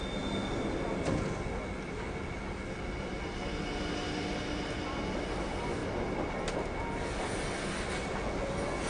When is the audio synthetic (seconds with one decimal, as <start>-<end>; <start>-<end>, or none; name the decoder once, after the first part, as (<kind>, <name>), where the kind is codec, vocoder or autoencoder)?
none